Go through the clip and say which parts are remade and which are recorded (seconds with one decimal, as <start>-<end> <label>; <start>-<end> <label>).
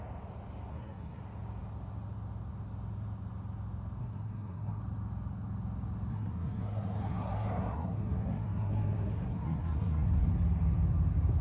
0.0-0.7 recorded; 0.7-1.2 remade; 1.2-4.0 recorded; 4.0-4.8 remade; 4.8-6.1 recorded; 6.1-10.3 remade; 10.3-11.4 recorded